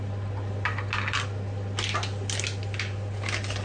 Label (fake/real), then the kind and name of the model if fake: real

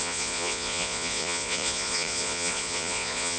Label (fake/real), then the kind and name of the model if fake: fake, vocoder, Vocos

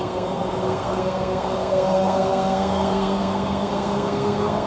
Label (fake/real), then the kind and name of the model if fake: fake, codec, SNAC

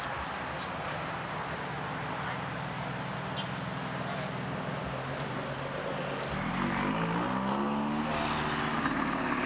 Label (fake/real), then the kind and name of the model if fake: real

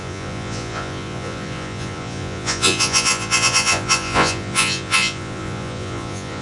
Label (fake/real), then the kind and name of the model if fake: fake, vocoder, Vocos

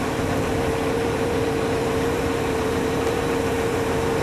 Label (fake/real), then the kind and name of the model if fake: fake, vocoder, BigVGAN v2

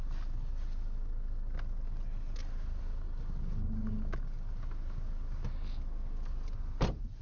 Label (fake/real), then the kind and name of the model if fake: real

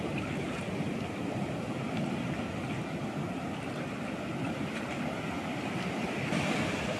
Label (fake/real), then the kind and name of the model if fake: real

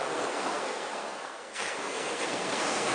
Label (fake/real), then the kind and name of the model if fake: fake, codec, SNAC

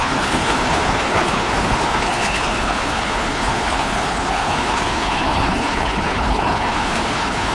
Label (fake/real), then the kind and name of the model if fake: fake, codec, HILCodec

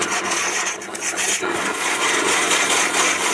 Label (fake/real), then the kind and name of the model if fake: fake, vocoder, Vocos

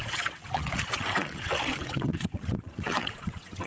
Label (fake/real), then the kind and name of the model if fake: fake, vocoder, WaveNeXt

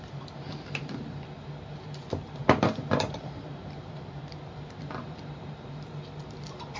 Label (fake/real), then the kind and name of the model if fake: fake, vocoder, BigVGAN v2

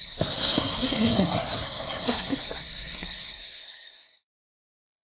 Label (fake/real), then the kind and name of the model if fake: fake, codec, SNAC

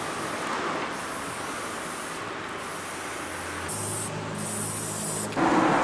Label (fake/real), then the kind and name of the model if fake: real